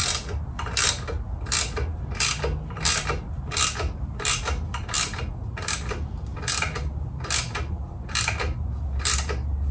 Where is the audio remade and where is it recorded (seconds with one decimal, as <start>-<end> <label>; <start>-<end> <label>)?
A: 0.0-9.7 recorded